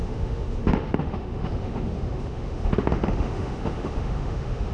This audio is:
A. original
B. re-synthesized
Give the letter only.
B